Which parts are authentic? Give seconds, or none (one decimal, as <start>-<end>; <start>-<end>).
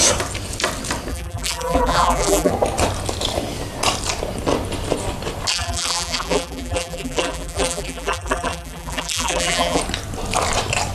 0.0-1.1; 2.5-5.5; 9.8-10.9